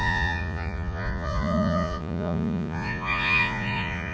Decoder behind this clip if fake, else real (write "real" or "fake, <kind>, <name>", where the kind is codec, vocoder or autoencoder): fake, vocoder, Vocos